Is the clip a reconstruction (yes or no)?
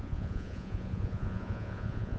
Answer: yes